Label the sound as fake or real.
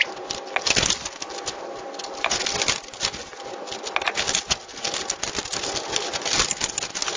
real